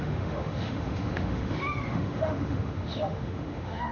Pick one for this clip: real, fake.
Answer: fake